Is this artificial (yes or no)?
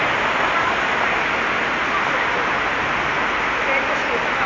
no